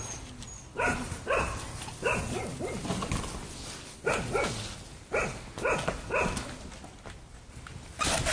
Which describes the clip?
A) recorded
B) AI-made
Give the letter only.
A